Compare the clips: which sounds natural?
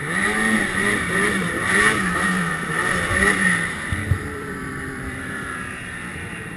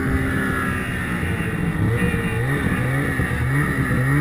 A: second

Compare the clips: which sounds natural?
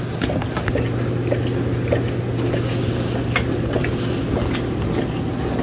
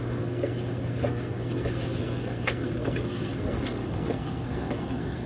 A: first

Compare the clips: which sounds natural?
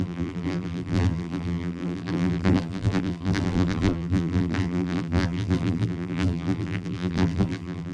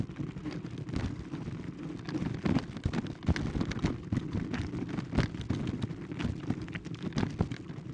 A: second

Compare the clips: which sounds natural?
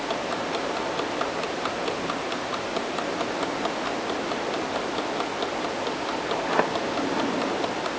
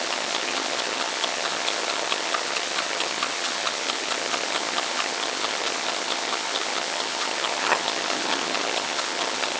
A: first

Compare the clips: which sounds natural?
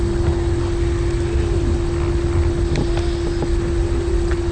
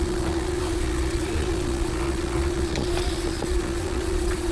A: first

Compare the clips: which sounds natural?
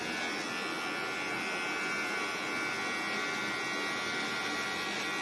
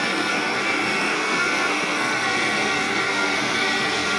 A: first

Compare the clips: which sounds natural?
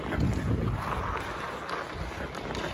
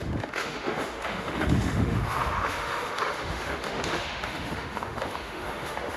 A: first